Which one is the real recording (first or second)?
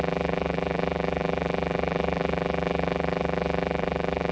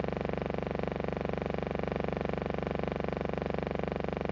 second